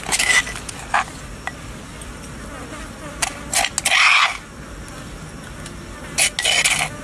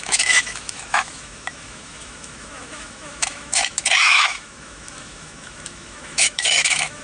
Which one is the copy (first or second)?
second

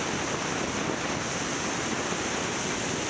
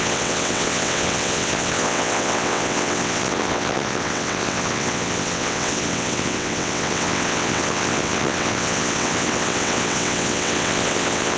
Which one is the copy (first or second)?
second